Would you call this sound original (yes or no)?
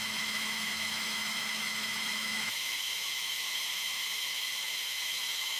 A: no